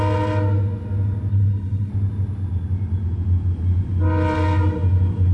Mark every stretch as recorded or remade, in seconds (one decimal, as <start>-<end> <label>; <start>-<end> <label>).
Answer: 0.0-1.3 recorded; 1.3-1.9 remade; 1.9-5.3 recorded